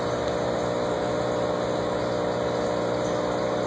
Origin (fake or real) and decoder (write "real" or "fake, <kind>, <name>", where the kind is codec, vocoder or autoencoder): real